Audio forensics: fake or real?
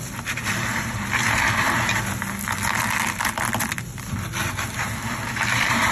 real